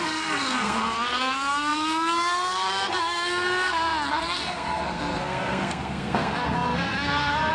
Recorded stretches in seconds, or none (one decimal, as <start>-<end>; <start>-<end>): none